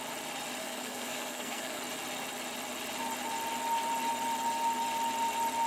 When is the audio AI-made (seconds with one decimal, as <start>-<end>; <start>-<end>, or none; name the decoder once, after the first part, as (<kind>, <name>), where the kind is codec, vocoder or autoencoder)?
0.6-1.8 (codec, SNAC)